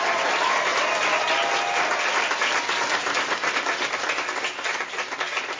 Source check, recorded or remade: recorded